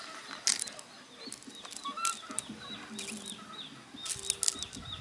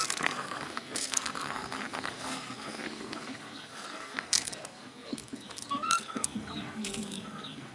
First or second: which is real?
first